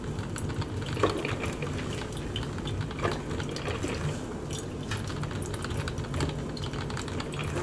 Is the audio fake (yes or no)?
no